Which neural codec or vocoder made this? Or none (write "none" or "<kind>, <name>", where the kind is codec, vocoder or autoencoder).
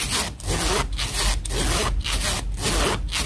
none